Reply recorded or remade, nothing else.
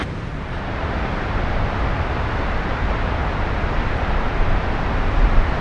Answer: remade